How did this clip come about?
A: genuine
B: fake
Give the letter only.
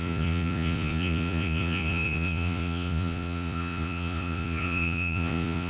B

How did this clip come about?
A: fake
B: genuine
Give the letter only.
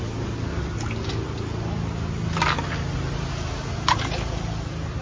B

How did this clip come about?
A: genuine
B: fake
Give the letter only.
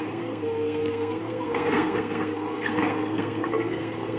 B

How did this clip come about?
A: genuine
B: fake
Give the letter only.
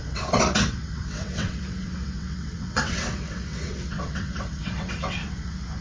B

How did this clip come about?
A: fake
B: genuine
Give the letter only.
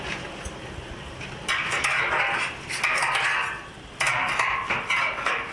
B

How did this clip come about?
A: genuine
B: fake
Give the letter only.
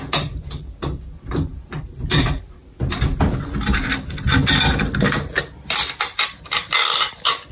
A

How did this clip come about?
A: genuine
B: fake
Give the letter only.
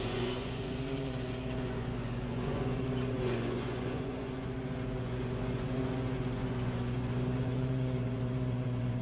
B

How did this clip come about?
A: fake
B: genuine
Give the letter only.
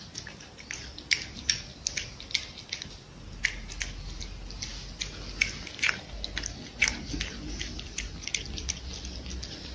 B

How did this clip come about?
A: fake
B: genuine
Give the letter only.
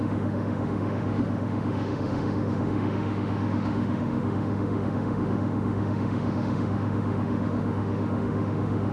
A